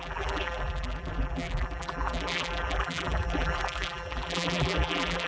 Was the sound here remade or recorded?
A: remade